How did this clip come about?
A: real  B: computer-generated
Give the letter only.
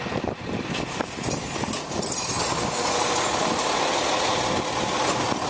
A